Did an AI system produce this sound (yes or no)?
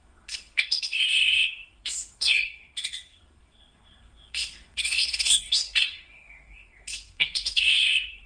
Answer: yes